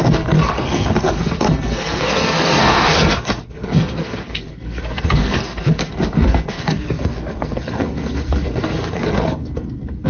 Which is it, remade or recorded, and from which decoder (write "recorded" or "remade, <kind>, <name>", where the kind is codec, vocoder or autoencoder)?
remade, codec, SNAC